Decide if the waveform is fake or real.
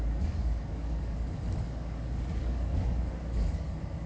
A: fake